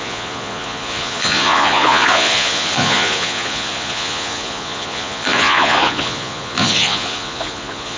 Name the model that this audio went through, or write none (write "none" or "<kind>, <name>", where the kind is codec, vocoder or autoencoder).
vocoder, Vocos